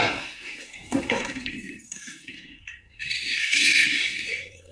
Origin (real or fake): fake